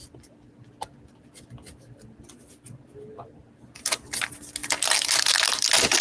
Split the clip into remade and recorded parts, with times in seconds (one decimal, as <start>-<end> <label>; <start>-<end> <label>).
0.0-6.0 recorded